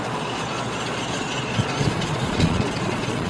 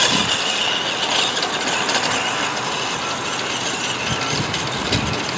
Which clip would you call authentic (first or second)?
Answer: second